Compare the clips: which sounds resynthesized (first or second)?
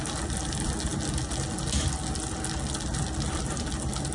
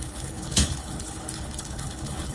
second